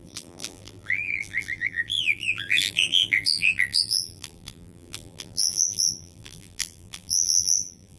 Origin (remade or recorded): remade